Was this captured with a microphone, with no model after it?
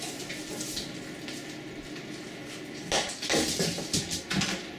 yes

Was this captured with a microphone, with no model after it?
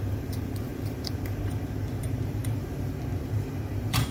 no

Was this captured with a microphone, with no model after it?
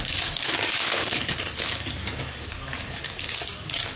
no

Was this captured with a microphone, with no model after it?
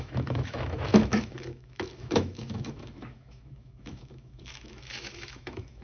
no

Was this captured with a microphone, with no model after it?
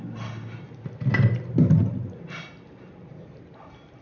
yes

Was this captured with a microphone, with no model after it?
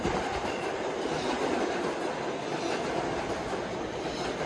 yes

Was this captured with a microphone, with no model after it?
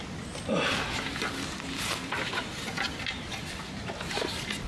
yes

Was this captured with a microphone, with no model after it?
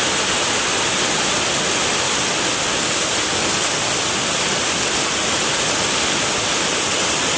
yes